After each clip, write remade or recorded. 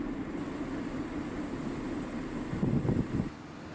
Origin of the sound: recorded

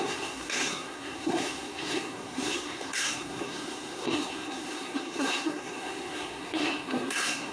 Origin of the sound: remade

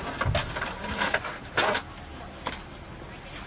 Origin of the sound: recorded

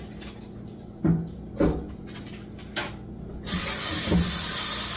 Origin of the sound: recorded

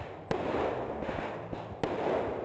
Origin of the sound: recorded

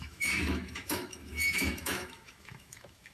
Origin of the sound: remade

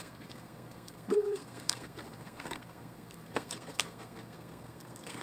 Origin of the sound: remade